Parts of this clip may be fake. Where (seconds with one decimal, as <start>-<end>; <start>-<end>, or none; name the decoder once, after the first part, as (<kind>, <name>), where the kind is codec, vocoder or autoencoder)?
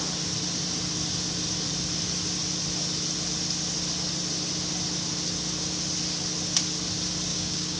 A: 7.3-7.8 (codec, DAC)